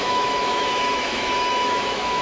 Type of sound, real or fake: fake